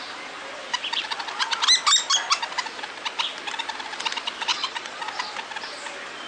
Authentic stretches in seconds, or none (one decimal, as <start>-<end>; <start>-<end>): 0.0-4.5; 5.0-6.3